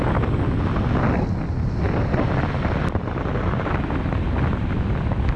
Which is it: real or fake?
real